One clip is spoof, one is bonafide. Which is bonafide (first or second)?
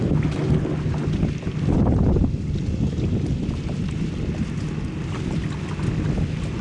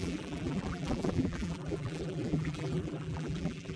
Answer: first